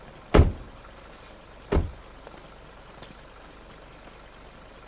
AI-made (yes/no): no